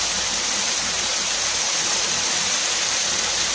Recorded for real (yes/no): no